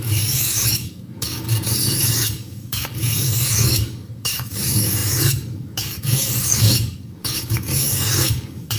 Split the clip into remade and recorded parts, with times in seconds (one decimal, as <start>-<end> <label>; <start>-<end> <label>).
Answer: 0.0-8.8 remade